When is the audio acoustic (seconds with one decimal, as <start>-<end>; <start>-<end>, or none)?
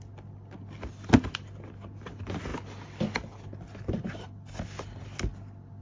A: 0.0-5.8